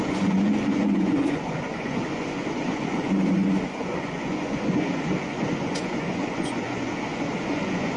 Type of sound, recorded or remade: remade